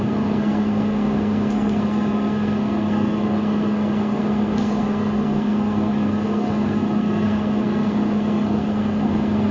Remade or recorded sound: remade